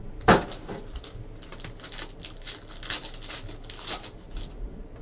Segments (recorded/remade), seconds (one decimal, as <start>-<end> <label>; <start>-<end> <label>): 0.0-5.0 recorded